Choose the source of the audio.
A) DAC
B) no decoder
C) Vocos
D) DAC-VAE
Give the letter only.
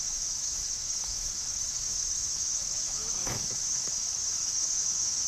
D